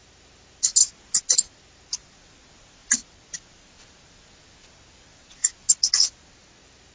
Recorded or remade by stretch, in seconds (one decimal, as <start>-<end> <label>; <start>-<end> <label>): 0.0-6.9 recorded